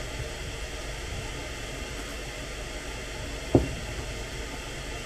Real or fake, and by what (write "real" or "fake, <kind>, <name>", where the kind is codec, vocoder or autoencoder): real